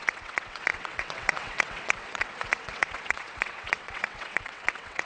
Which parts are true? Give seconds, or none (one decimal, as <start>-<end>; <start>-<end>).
none